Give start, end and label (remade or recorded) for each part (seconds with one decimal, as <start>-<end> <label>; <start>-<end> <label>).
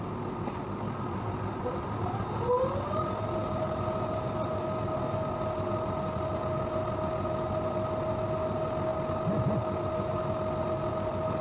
0.0-11.4 recorded